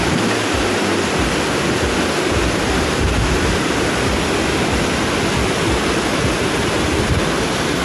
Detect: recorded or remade recorded